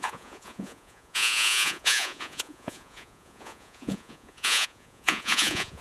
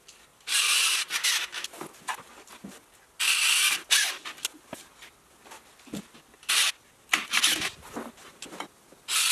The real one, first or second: second